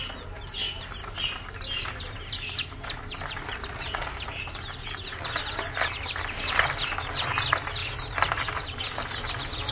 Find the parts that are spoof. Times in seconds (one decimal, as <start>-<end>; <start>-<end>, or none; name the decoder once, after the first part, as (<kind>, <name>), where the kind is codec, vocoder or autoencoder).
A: none